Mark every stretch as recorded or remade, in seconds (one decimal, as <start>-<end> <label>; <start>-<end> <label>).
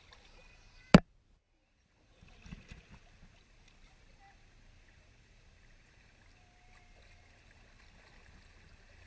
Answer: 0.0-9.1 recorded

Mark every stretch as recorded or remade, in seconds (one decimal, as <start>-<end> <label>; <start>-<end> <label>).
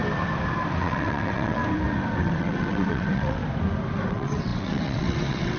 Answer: 0.0-0.8 recorded; 0.8-1.6 remade; 1.6-2.2 recorded; 2.2-3.4 remade; 3.4-4.1 recorded; 4.1-5.6 remade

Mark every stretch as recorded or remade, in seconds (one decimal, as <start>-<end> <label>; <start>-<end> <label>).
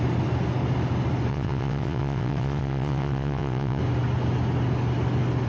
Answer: 0.0-1.3 recorded; 1.3-3.8 remade; 3.8-5.5 recorded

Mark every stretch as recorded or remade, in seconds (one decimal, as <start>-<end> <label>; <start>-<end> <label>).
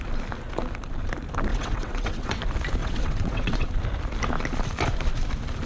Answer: 0.0-1.5 recorded; 1.5-2.4 remade; 2.4-2.8 recorded; 2.8-3.7 remade; 3.7-5.7 recorded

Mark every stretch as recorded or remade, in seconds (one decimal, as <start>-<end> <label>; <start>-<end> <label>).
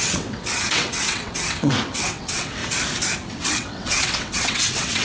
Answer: 0.0-2.6 remade; 2.6-3.3 recorded; 3.3-5.0 remade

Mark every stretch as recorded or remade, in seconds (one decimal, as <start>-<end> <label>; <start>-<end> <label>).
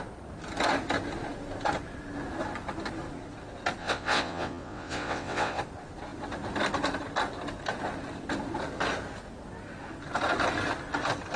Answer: 0.0-3.8 recorded; 3.8-5.6 remade; 5.6-11.4 recorded